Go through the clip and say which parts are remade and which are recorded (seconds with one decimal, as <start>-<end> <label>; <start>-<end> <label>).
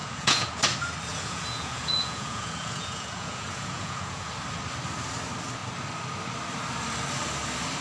0.0-0.6 remade; 0.6-1.1 recorded; 1.1-4.3 remade; 4.3-7.8 recorded